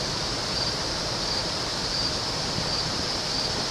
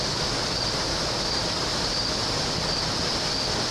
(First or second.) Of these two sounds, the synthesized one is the first